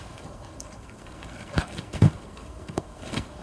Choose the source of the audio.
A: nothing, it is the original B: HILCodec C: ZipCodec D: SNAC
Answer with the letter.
D